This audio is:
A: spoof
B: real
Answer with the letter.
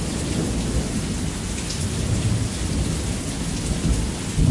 B